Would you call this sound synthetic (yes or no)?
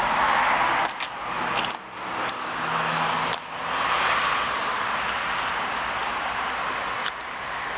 no